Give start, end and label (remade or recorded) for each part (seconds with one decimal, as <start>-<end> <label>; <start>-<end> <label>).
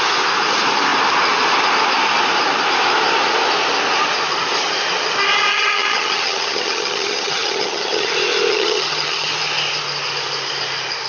0.0-5.5 recorded; 5.5-8.1 remade; 8.1-8.5 recorded; 8.5-9.3 remade; 9.3-11.1 recorded